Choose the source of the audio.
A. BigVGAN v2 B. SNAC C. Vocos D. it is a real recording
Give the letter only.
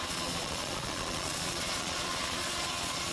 C